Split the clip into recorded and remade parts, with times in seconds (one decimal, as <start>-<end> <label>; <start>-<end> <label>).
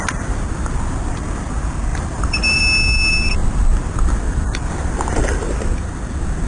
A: 0.0-1.9 recorded; 1.9-2.6 remade; 2.6-6.5 recorded